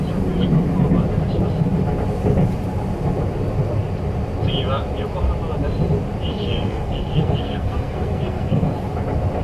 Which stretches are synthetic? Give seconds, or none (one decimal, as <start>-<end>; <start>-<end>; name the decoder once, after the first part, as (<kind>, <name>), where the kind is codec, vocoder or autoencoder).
6.3-8.7 (codec, SNAC)